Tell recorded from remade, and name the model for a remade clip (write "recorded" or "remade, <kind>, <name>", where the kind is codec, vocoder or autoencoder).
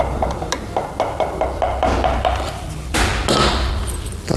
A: recorded